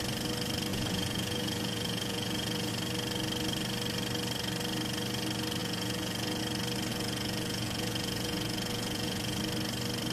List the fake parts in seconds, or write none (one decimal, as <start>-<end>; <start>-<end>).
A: 0.7-2.7; 5.6-6.4; 6.9-9.4